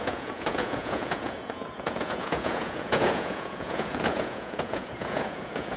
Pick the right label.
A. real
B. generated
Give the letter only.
B